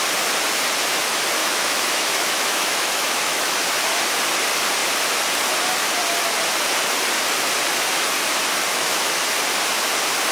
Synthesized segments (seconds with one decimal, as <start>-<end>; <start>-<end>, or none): 1.4-3.7; 8.7-9.2